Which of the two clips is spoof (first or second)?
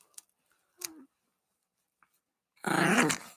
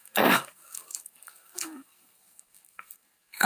second